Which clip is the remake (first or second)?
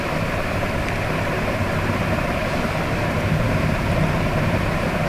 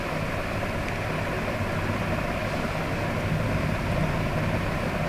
first